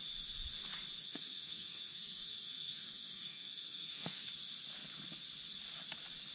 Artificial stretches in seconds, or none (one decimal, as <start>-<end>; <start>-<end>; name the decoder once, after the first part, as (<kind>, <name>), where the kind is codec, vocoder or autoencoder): 1.0-4.3 (codec, SNAC)